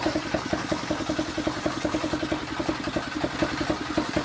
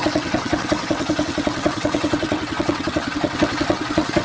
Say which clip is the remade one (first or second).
second